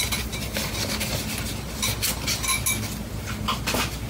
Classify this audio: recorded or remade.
recorded